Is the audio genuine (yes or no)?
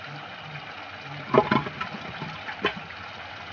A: yes